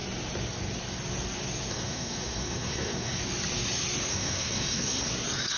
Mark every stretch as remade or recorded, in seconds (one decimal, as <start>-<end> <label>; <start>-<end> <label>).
0.0-1.7 recorded; 1.7-3.2 remade; 3.2-4.1 recorded; 4.1-5.1 remade; 5.1-5.6 recorded